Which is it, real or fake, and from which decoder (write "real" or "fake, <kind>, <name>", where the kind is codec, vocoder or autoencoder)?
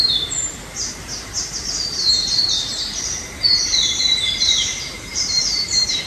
fake, vocoder, BigVGAN v2